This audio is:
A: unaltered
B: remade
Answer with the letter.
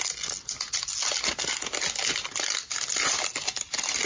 A